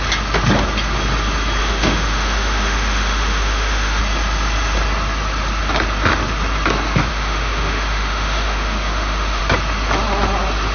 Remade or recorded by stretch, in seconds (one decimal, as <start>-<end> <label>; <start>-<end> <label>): 0.0-1.6 recorded; 1.6-4.0 remade; 4.0-7.1 recorded; 7.1-9.4 remade; 9.4-10.7 recorded